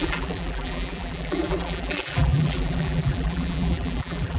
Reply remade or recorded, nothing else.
remade